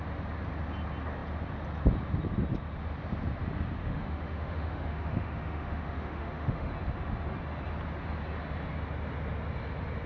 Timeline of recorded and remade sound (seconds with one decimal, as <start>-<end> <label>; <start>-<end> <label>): 0.0-3.8 recorded; 3.8-6.7 remade; 6.7-10.1 recorded